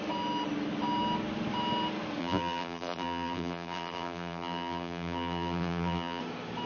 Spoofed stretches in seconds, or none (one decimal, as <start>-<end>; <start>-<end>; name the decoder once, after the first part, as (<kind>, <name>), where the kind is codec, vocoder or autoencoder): 2.2-6.2 (vocoder, BigVGAN v2)